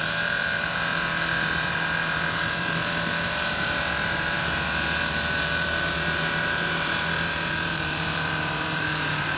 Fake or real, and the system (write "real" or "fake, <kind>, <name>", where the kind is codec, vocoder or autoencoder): fake, vocoder, BigVGAN v2